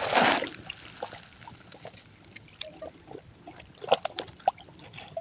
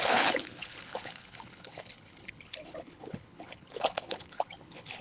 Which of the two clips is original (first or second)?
first